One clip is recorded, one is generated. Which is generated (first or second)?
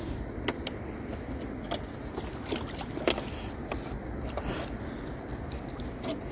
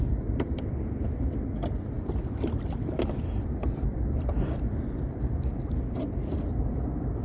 second